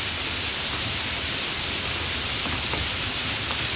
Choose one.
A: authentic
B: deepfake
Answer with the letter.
A